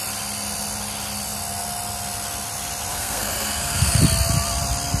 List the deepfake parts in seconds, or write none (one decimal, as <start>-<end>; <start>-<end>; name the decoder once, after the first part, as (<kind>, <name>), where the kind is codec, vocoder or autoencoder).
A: 2.9-4.0 (codec, SNAC)